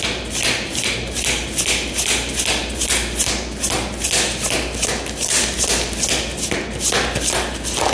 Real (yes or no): yes